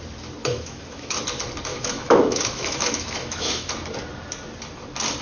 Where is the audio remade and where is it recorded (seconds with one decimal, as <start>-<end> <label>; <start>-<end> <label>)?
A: 0.0-0.4 recorded; 0.4-1.2 remade; 1.2-1.7 recorded; 1.7-3.7 remade; 3.7-5.2 recorded